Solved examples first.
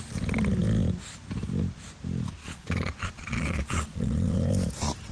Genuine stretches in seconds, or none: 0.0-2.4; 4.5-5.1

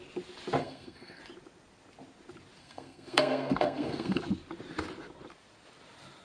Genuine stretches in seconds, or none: 0.0-0.6; 1.2-2.6; 4.2-6.2

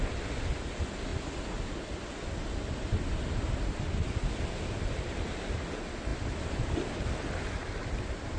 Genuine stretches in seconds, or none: 0.0-8.4